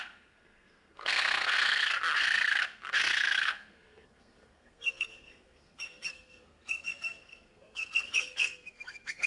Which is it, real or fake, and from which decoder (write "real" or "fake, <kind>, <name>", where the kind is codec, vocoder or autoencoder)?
fake, codec, SNAC